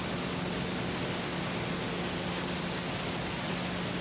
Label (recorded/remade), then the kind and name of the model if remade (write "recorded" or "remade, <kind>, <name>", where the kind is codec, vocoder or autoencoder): recorded